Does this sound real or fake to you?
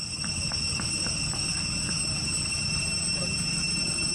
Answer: fake